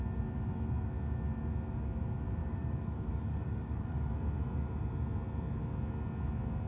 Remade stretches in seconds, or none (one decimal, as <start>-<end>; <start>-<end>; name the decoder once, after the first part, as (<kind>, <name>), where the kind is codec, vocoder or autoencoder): 2.4-4.2 (codec, DAC)